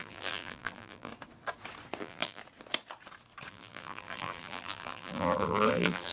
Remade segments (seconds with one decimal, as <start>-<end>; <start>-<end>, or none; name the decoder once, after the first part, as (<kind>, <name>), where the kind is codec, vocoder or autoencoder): 0.0-1.1 (vocoder, BigVGAN v2); 2.0-2.4; 3.5-6.1

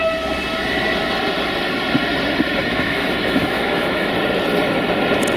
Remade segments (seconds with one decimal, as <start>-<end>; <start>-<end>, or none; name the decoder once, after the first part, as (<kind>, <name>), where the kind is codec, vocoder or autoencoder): 2.6-4.1 (autoencoder, DAC-VAE)

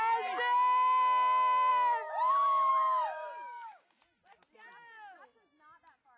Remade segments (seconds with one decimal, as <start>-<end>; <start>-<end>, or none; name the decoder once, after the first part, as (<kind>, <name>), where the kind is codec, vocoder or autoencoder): 2.7-4.0 (codec, DAC)

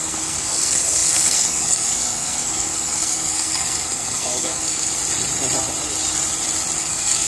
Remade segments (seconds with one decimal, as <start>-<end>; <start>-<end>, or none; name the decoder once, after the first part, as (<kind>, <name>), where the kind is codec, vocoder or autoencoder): 0.0-5.0 (codec, SNAC); 6.8-7.3

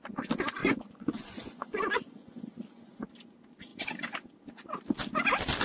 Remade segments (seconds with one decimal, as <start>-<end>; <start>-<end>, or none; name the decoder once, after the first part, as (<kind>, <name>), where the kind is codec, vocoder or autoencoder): 0.6-2.4 (vocoder, Vocos)

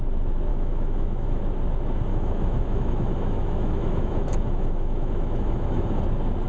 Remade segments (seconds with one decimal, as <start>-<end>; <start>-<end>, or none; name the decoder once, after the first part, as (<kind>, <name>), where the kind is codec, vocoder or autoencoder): 0.5-1.4 (autoencoder, DAC-VAE); 2.1-6.0

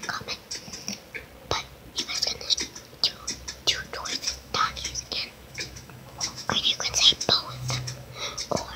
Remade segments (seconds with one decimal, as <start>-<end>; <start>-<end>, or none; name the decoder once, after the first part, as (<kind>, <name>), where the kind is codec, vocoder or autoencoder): 4.1-8.1 (autoencoder, DAC-VAE)